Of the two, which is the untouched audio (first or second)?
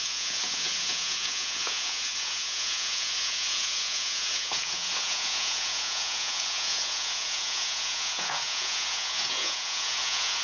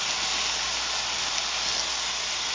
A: second